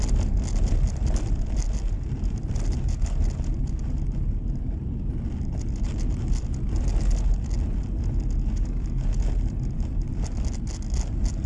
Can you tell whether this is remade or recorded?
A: recorded